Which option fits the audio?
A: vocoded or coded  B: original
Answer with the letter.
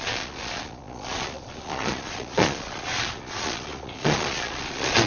A